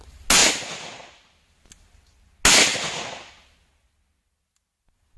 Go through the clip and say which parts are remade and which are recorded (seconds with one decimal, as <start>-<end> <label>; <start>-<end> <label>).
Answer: 0.0-5.2 recorded